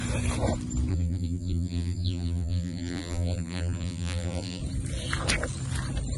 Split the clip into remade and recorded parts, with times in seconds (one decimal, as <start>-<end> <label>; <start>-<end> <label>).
0.0-0.9 recorded; 0.9-4.6 remade; 4.6-6.2 recorded